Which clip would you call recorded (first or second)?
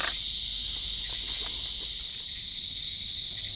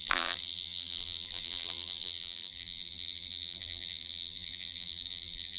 first